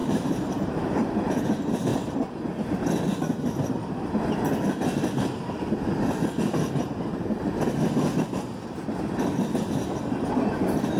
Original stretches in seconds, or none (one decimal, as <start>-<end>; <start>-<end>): 1.4-1.9; 2.7-11.0